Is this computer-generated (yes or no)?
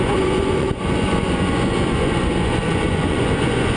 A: yes